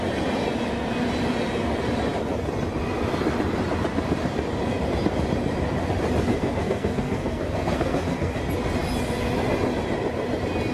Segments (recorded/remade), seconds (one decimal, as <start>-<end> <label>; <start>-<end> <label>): 0.0-6.3 recorded; 6.3-8.4 remade; 8.4-10.7 recorded